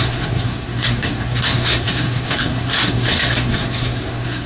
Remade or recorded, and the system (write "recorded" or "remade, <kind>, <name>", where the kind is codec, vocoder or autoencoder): remade, codec, SNAC